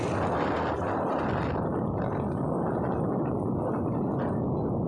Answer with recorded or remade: recorded